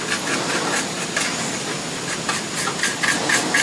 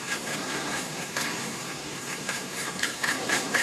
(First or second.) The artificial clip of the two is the second